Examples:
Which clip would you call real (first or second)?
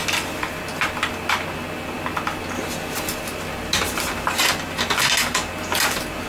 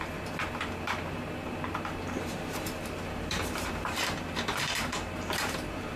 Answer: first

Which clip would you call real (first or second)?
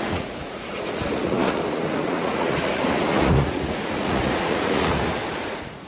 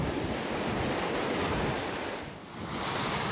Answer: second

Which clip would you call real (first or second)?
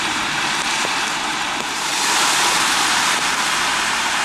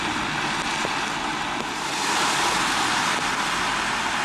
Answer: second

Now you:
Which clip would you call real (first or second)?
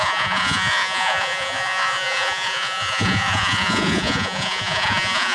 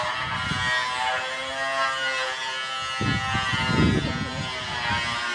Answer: second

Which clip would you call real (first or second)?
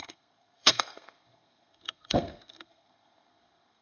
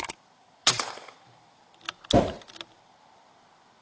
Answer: second